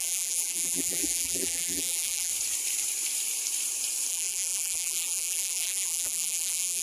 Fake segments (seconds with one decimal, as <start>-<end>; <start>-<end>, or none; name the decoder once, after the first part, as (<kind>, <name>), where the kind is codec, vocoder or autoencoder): 0.0-2.3 (vocoder, BigVGAN v2); 4.1-6.8